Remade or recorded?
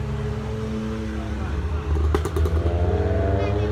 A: recorded